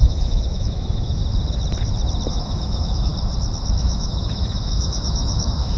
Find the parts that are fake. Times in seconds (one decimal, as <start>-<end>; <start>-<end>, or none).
0.0-1.2; 2.3-3.1; 3.8-5.8